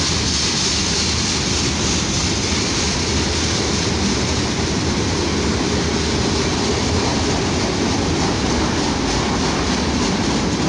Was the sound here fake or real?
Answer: real